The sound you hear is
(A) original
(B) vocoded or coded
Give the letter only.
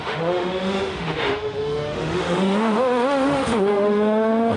B